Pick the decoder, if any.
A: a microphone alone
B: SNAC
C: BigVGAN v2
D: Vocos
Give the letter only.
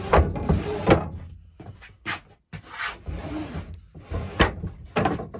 A